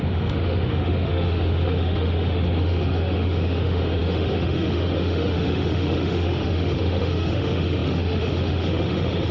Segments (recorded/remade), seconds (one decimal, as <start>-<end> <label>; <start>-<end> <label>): 0.0-9.3 remade